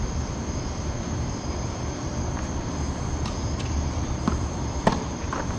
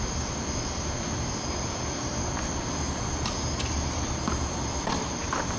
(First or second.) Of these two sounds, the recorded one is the second